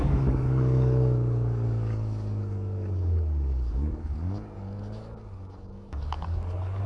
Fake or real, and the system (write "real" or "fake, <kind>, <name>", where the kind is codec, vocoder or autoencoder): fake, codec, DAC